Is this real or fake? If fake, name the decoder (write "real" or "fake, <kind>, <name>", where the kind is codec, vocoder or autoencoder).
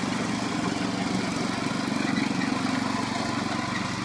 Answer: real